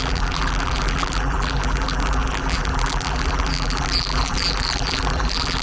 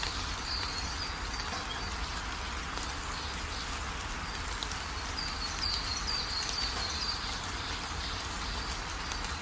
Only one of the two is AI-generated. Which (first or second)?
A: first